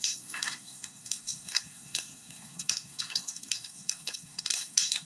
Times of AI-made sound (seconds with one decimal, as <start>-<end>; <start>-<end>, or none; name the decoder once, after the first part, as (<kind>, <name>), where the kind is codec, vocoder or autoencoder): 0.0-5.0 (codec, SNAC)